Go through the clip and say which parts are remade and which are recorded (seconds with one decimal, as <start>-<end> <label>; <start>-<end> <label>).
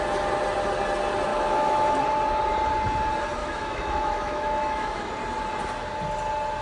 0.0-1.3 recorded; 1.3-2.0 remade; 2.0-3.4 recorded; 3.4-5.1 remade; 5.1-6.6 recorded